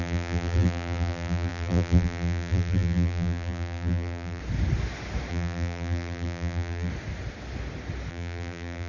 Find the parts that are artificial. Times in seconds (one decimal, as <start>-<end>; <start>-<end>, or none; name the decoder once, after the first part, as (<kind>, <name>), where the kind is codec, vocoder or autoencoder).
0.0-4.4 (vocoder, BigVGAN v2); 5.3-6.9; 8.1-8.9